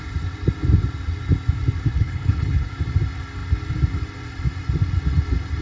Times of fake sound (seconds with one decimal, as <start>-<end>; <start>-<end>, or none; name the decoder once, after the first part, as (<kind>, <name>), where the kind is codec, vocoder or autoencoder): 1.9-2.7 (codec, HILCodec)